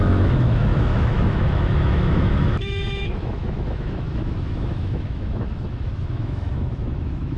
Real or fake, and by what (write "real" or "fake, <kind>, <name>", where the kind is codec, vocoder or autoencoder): fake, autoencoder, DAC-VAE